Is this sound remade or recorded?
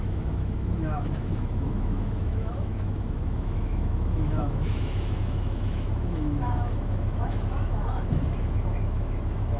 remade